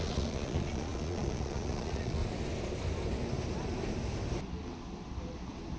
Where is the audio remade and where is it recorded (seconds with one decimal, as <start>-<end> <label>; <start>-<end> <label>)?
0.0-2.2 remade; 2.2-5.8 recorded